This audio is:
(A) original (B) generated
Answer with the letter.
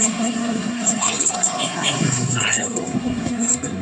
B